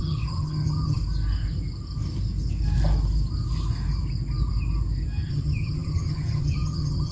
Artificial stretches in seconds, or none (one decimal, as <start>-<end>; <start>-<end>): 0.0-1.0; 5.3-7.1